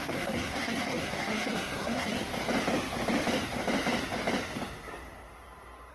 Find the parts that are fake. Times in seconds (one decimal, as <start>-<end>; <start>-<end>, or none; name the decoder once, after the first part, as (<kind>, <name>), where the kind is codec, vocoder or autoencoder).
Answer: 0.0-2.3 (codec, SNAC)